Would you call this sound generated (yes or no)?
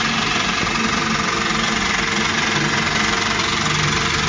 no